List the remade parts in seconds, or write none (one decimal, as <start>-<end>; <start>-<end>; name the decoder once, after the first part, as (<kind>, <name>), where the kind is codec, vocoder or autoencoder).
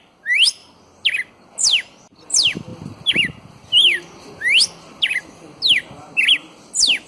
none